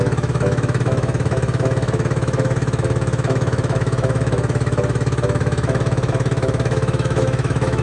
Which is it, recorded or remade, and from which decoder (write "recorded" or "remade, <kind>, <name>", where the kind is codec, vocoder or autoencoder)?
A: remade, autoencoder, DAC-VAE